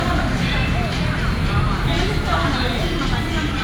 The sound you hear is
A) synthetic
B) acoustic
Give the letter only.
B